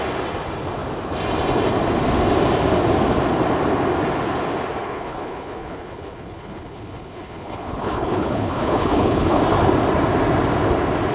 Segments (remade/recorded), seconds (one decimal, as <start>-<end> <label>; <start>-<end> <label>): 0.0-4.8 recorded; 4.8-9.4 remade; 9.4-11.1 recorded